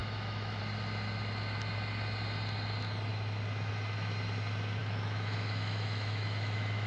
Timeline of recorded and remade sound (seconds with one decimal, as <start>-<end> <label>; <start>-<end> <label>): 0.0-0.6 remade; 0.6-4.8 recorded; 4.8-6.9 remade